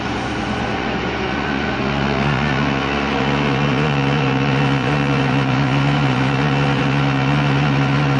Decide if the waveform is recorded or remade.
remade